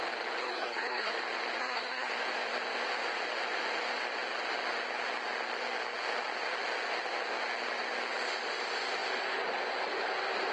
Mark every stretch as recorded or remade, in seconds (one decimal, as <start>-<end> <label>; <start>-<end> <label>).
0.0-0.4 recorded; 0.4-1.1 remade; 1.1-1.6 recorded; 1.6-2.1 remade; 2.1-10.5 recorded